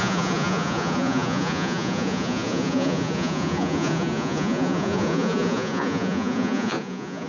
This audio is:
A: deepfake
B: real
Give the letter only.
A